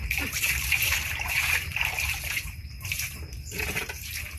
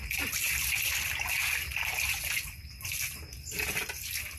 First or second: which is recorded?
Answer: second